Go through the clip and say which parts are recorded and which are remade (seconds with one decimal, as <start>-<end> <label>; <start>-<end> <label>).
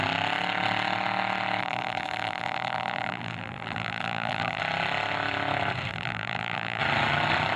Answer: 0.0-1.6 recorded; 1.6-4.6 remade; 4.6-5.9 recorded; 5.9-6.8 remade; 6.8-7.6 recorded